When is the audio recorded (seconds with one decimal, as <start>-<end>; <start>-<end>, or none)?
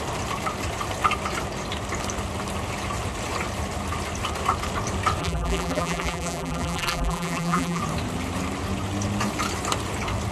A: 0.0-5.2; 7.8-10.3